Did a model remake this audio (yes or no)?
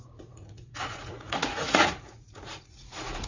yes